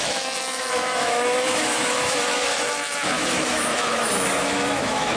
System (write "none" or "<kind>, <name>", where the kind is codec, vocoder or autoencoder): autoencoder, DAC-VAE